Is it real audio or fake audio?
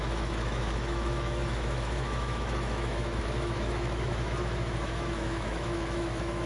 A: fake